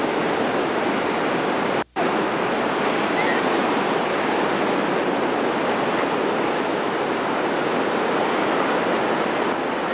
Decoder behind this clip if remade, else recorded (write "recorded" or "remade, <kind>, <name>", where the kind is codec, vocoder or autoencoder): recorded